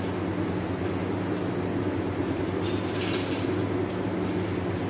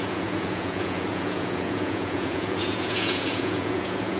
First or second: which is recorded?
first